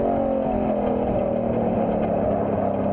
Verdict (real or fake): real